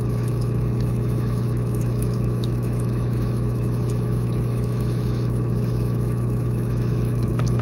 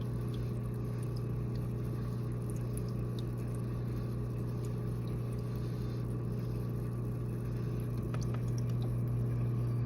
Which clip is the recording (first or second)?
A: second